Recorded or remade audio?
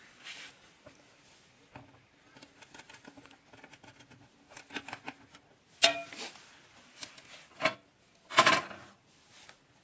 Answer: recorded